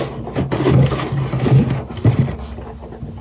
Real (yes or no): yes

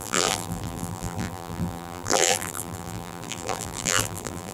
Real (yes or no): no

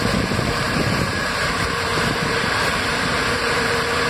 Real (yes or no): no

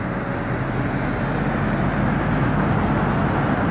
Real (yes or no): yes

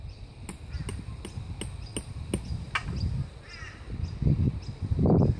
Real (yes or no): yes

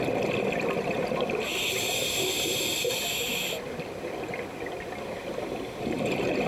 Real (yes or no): yes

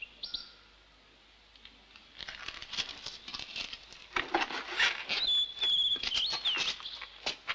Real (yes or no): yes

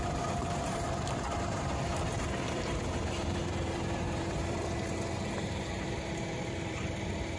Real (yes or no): no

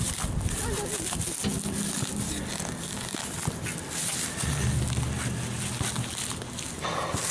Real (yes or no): yes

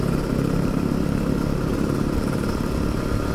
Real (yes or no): no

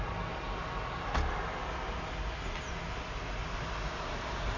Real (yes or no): yes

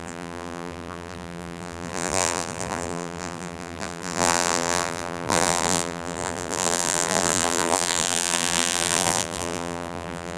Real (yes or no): no